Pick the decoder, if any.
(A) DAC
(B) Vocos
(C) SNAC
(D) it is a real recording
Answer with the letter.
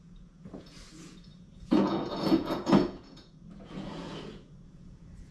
B